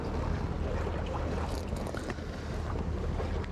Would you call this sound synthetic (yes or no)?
no